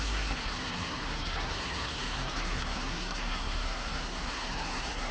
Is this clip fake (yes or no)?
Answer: yes